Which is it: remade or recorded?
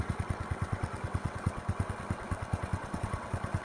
remade